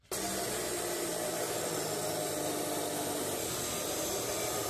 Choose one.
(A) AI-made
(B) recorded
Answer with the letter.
B